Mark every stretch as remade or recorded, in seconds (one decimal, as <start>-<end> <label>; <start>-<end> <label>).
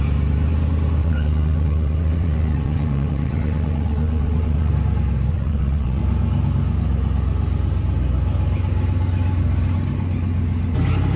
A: 0.0-1.0 recorded; 1.0-4.7 remade; 4.7-5.3 recorded; 5.3-6.0 remade; 6.0-11.2 recorded